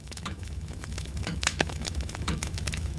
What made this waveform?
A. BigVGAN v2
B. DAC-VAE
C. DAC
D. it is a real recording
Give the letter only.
B